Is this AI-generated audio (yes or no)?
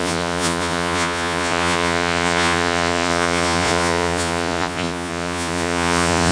yes